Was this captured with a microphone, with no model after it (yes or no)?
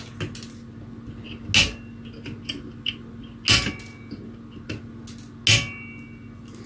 yes